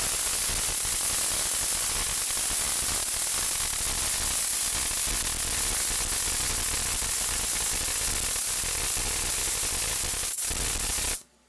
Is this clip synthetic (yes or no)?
no